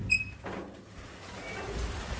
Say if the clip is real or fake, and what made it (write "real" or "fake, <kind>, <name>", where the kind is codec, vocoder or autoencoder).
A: real